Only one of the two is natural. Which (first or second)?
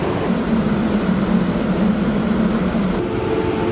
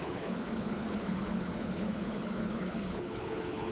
first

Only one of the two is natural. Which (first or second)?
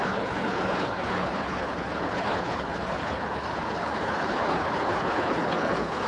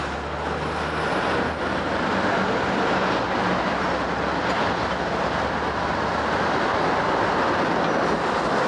second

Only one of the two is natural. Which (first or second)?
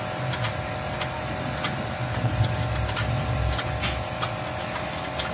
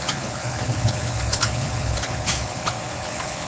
first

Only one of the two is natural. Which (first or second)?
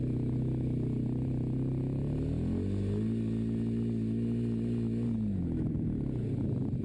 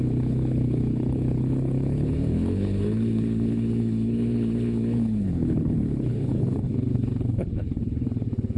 first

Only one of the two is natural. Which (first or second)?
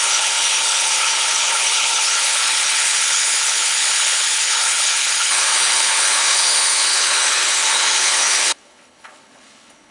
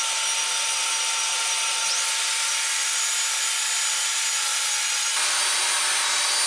second